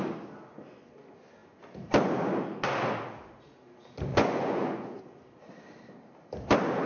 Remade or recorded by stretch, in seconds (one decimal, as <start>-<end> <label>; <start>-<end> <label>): 0.0-4.1 recorded; 4.1-5.0 remade; 5.0-6.9 recorded

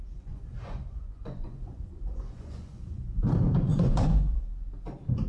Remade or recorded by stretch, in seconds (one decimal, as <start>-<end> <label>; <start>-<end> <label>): 0.0-3.2 remade; 3.2-3.7 recorded; 3.7-4.4 remade; 4.4-5.3 recorded

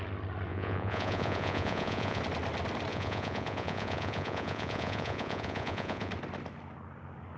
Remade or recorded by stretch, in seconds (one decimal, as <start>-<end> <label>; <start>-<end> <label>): 0.0-0.5 recorded; 0.5-2.2 remade; 2.2-2.9 recorded; 2.9-6.1 remade; 6.1-7.4 recorded

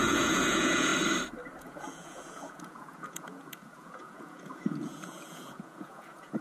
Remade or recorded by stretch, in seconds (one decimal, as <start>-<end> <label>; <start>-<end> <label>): 0.0-0.9 remade; 0.9-1.6 recorded; 1.6-6.4 remade

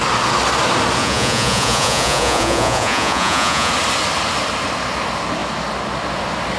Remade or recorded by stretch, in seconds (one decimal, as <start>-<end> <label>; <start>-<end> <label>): 0.0-1.0 recorded; 1.0-3.7 remade; 3.7-6.6 recorded